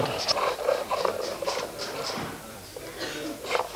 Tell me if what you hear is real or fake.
fake